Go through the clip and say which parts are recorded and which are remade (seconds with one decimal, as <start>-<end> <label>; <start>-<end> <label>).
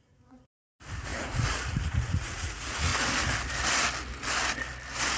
0.0-2.9 remade; 2.9-5.2 recorded